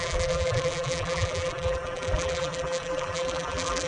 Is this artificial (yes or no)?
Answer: yes